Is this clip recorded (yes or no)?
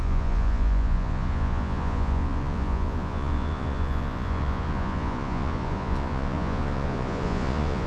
no